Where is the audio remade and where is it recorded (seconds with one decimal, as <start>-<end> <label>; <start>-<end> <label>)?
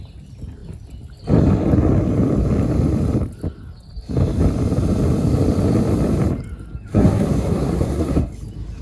0.0-6.9 recorded; 6.9-8.3 remade; 8.3-8.8 recorded